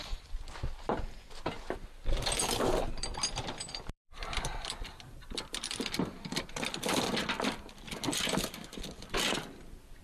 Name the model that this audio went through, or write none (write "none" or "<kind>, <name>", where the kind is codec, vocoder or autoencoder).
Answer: vocoder, BigVGAN v2